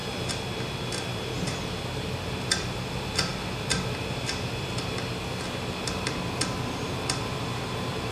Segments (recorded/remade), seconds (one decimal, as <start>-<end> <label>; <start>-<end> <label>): 0.0-8.1 recorded